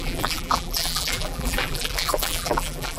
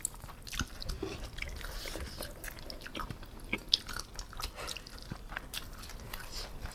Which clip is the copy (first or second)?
first